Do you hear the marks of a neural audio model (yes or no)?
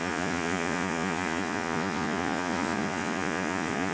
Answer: yes